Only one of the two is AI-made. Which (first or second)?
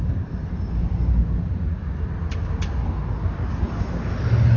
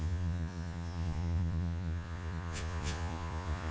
second